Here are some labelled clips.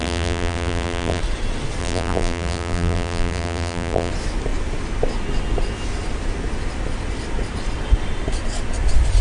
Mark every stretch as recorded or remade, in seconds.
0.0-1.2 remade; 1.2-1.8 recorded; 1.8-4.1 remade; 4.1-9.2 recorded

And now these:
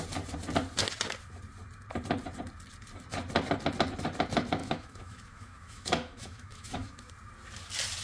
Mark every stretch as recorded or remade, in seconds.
0.0-4.6 recorded; 4.6-7.1 remade; 7.1-8.0 recorded

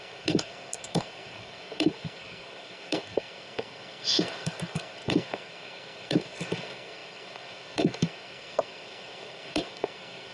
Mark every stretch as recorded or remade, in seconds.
0.0-10.3 remade

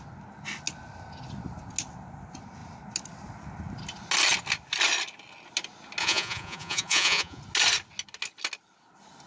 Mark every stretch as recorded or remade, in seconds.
0.0-6.0 recorded; 6.0-7.4 remade; 7.4-9.3 recorded

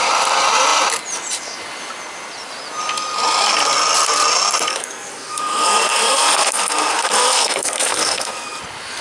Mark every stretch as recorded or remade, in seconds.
0.0-4.7 recorded; 4.7-8.6 remade; 8.6-9.0 recorded

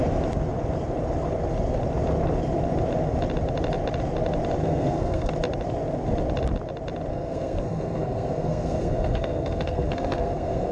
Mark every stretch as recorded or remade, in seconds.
0.0-4.6 recorded; 4.6-5.3 remade; 5.3-7.1 recorded; 7.1-10.7 remade